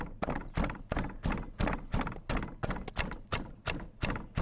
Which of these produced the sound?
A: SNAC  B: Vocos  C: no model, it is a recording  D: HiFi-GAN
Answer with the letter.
C